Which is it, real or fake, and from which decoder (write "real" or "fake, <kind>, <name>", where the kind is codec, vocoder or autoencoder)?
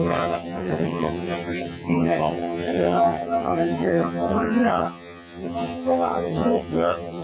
fake, vocoder, HiFi-GAN